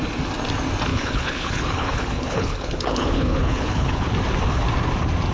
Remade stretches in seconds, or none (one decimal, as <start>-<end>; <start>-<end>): 0.9-4.1